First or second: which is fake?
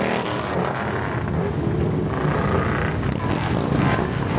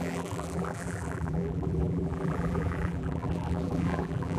second